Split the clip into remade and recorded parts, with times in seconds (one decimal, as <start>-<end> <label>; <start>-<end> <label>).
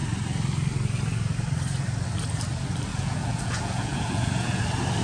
0.0-2.9 recorded; 2.9-4.6 remade; 4.6-5.0 recorded